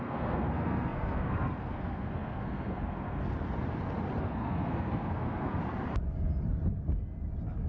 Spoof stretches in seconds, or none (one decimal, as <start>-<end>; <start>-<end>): 0.0-3.2; 4.2-5.6